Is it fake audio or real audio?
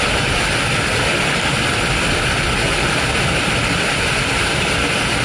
real